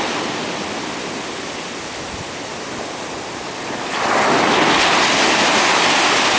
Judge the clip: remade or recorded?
recorded